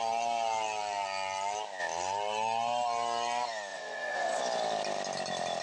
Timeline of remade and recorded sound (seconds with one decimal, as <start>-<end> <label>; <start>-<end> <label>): 0.0-3.7 recorded; 3.7-4.4 remade; 4.4-5.6 recorded